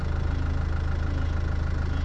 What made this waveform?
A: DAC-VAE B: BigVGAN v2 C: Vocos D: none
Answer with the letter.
D